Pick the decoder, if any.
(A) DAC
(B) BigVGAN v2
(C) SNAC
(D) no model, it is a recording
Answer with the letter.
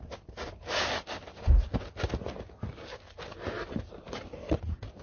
D